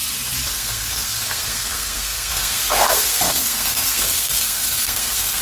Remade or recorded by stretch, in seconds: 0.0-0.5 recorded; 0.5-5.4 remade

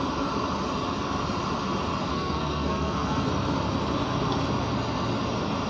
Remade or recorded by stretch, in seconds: 0.0-2.1 recorded; 2.1-3.3 remade; 3.3-5.7 recorded